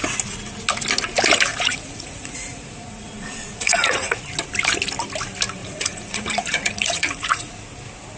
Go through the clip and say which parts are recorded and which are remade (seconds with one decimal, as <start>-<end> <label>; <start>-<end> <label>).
0.0-1.5 recorded; 1.5-4.2 remade; 4.2-5.6 recorded; 5.6-7.5 remade; 7.5-8.2 recorded